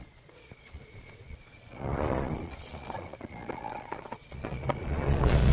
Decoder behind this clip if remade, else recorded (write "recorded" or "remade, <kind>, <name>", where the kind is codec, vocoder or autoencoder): remade, vocoder, Vocos